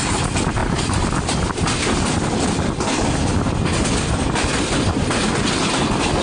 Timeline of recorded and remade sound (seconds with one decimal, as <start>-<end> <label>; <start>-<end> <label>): 0.0-6.2 recorded